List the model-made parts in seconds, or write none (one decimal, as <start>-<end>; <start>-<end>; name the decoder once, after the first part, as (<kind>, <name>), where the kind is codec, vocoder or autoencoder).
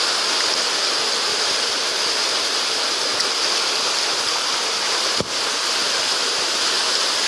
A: none